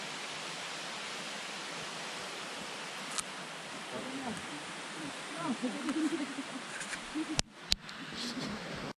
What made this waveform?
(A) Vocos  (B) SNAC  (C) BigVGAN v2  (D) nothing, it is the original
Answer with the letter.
C